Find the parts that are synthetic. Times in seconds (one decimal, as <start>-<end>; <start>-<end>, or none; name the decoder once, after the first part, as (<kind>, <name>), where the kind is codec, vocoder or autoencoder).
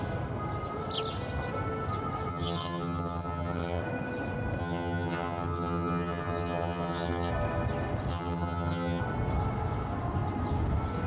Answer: 2.3-3.8 (vocoder, HiFi-GAN); 4.6-7.3; 8.1-9.0